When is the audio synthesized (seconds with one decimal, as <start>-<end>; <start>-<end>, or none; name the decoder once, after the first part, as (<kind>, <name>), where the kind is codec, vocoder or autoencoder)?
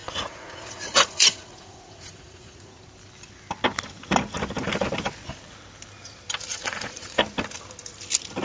0.0-2.7 (vocoder, Vocos); 6.5-7.2